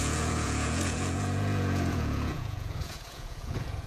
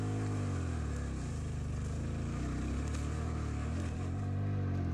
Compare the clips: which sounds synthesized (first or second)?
first